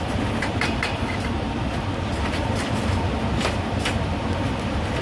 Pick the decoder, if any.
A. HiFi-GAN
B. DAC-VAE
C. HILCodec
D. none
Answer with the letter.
D